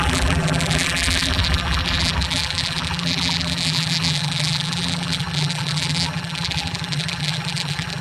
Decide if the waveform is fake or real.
fake